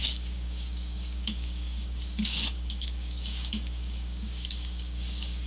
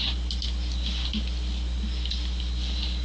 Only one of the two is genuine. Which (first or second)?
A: second